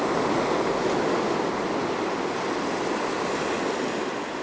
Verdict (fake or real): real